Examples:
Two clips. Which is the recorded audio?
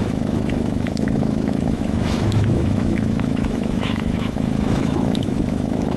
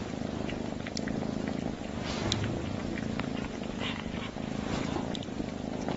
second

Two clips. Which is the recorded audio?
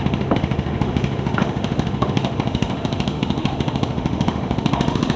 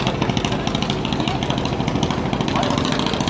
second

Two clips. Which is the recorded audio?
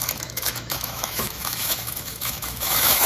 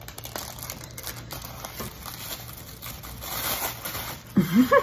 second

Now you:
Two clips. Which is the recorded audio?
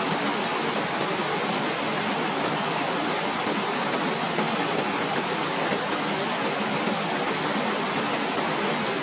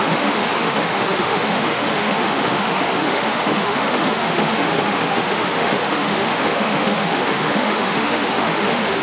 first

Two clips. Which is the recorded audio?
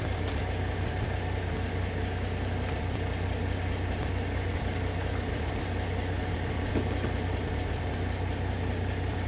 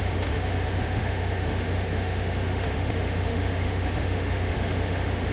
first